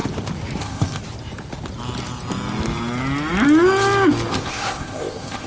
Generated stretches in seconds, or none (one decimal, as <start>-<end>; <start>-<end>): 0.6-1.0; 4.3-5.5